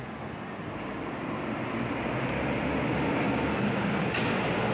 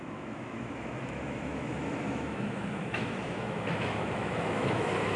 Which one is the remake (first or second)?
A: second